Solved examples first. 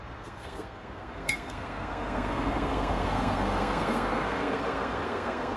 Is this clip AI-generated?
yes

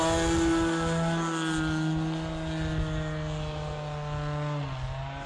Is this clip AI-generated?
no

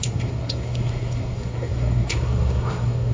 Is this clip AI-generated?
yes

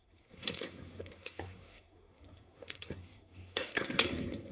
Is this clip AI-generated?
yes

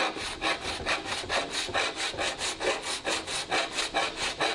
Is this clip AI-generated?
no